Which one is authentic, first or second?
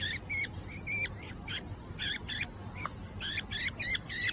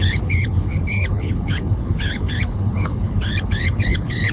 first